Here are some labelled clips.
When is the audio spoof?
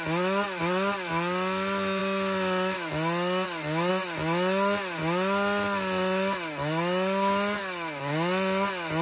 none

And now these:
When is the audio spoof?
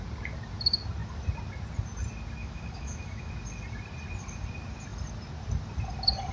2.4-3.3 (autoencoder, DAC-VAE)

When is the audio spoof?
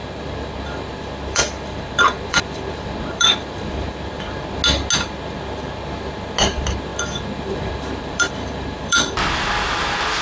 0.0-4.1 (vocoder, BigVGAN v2); 6.9-9.3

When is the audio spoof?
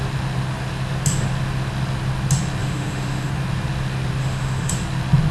2.6-3.3 (autoencoder, DAC-VAE); 4.2-4.7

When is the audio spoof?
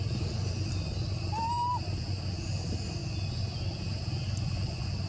0.0-3.0 (vocoder, BigVGAN v2); 3.6-5.1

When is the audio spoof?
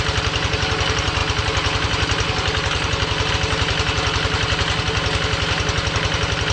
none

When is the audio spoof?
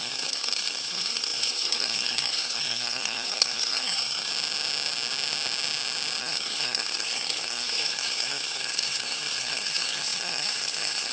0.0-4.3 (codec, SNAC); 6.2-11.1